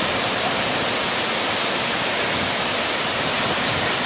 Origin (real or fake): real